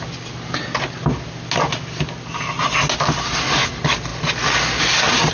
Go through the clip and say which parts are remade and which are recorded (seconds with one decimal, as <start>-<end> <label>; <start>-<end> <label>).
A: 0.0-5.3 recorded